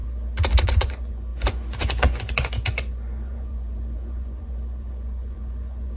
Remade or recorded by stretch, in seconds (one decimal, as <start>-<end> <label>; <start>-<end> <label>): 0.0-0.6 recorded; 0.6-6.0 remade